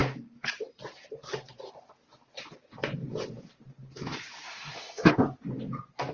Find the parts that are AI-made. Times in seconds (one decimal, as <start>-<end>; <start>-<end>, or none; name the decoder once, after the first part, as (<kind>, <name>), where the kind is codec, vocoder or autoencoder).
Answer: 4.5-5.1 (codec, SNAC)